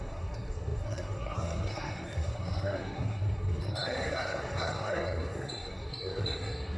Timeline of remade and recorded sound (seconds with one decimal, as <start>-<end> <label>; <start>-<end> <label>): 0.0-6.8 remade